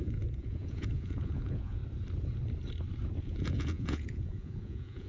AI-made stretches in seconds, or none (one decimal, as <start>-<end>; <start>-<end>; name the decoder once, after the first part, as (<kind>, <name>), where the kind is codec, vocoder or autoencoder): 0.0-1.8 (vocoder, Vocos); 3.2-5.1